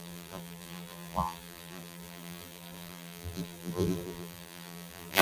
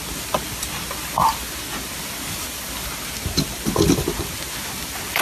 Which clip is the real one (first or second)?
second